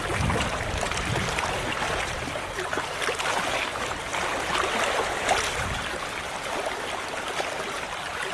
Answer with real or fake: real